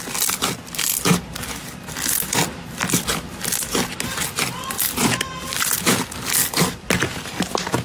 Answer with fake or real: real